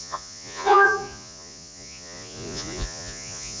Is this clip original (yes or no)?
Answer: no